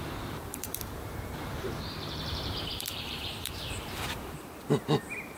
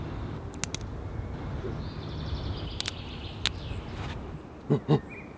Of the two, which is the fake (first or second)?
first